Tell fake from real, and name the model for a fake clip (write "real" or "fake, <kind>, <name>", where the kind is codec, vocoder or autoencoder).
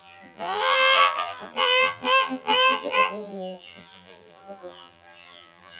fake, vocoder, BigVGAN v2